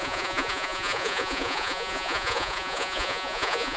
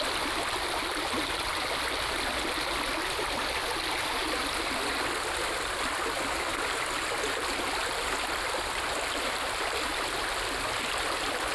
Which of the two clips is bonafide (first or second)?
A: second